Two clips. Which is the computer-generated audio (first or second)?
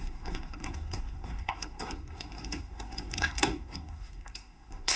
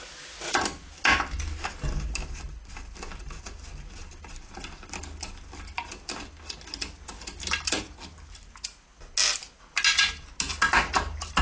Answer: first